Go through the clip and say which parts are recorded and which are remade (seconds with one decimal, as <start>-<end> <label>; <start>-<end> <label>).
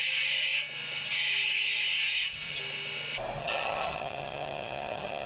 0.0-2.1 recorded; 2.1-2.6 remade; 2.6-3.4 recorded; 3.4-5.3 remade